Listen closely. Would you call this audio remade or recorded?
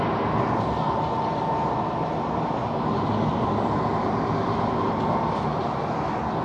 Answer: recorded